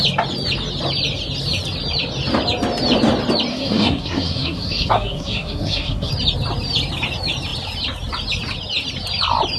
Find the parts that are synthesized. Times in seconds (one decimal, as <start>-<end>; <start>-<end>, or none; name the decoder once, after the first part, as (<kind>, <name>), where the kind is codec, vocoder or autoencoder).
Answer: 3.5-6.1 (codec, SNAC)